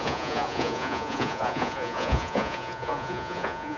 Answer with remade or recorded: remade